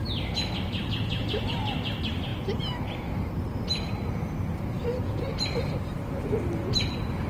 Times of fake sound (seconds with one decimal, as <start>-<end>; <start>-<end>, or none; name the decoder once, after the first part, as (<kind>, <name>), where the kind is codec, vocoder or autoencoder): none